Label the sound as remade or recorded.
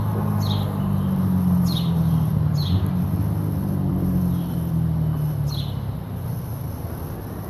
recorded